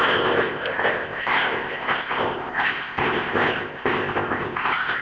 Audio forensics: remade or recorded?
remade